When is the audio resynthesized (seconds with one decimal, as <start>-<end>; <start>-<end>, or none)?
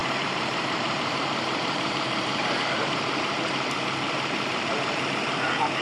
0.0-3.5